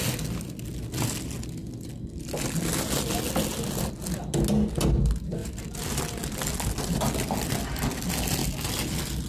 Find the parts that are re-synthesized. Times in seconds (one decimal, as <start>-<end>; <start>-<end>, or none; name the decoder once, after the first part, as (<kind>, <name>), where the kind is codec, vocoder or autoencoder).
none